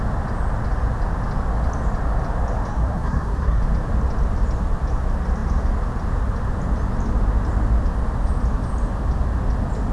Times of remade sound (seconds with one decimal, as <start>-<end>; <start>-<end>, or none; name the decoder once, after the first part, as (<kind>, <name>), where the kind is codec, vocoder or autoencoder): 2.7-3.6 (codec, SNAC)

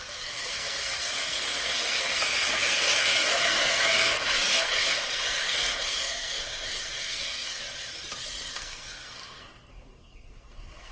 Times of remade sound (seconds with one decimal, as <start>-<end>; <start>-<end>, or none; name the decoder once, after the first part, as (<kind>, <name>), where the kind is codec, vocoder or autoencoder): 0.0-7.6 (codec, SNAC); 8.5-10.9